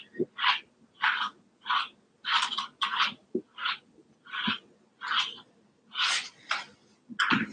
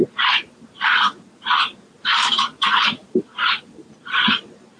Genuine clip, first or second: first